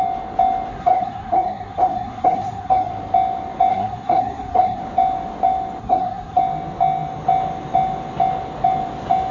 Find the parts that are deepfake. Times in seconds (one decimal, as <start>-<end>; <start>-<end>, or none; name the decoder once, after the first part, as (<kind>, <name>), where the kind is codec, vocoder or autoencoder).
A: 0.7-2.9 (codec, SNAC); 3.7-4.8; 5.8-6.4